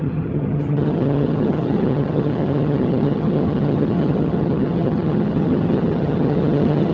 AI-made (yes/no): yes